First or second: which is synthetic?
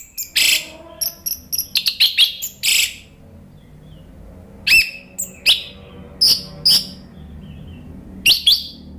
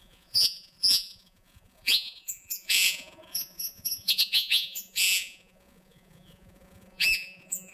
second